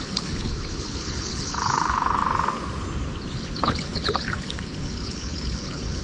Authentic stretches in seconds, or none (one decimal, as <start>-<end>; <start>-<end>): 2.2-3.3